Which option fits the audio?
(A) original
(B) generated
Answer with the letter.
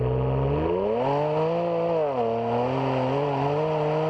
A